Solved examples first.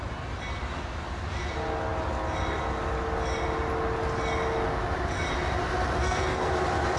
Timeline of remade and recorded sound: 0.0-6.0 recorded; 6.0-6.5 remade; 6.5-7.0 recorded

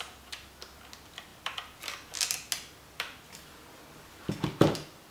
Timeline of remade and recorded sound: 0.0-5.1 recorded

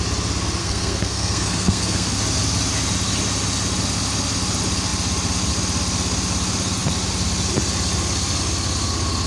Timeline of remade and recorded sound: 0.0-0.6 recorded; 0.6-2.2 remade; 2.2-9.3 recorded

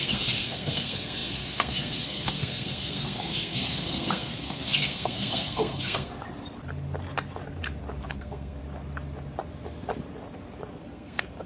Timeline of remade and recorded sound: 0.0-6.1 remade; 6.1-8.1 recorded; 8.1-8.6 remade; 8.6-10.7 recorded; 10.7-11.5 remade

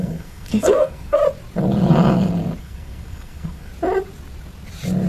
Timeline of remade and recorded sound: 0.0-1.2 remade; 1.2-2.6 recorded; 2.6-3.7 remade; 3.7-5.1 recorded

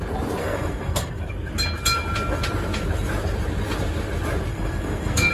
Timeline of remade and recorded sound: 0.0-0.4 recorded; 0.4-1.3 remade; 1.3-4.5 recorded; 4.5-5.3 remade